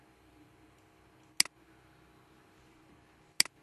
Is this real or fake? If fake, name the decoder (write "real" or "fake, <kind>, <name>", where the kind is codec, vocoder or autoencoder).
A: real